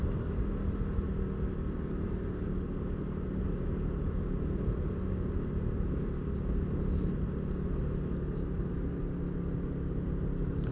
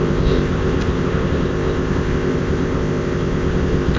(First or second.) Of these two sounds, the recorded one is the first